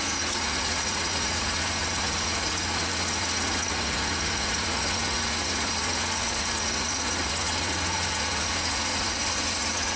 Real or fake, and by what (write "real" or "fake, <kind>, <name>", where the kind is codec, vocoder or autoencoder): fake, vocoder, Vocos